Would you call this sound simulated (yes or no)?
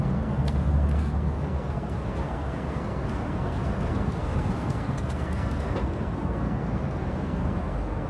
yes